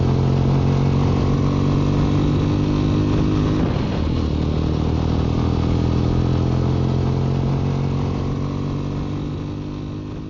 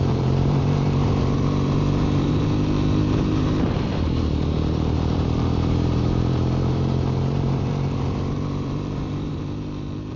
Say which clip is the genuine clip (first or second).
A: first